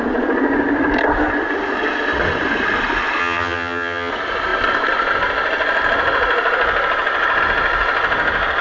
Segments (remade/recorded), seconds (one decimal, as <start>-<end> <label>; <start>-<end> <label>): 0.0-3.2 recorded; 3.2-4.1 remade; 4.1-8.6 recorded